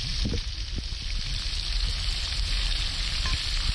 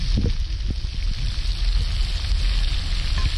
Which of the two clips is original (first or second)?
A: second